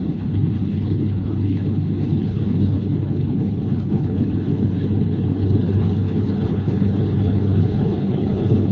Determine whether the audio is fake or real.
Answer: fake